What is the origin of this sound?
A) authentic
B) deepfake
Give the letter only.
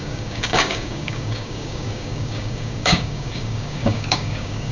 B